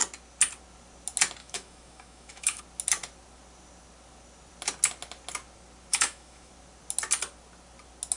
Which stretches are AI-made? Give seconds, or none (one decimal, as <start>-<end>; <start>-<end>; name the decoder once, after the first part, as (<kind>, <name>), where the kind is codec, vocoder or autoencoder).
1.4-2.6 (autoencoder, DAC-VAE); 5.9-6.5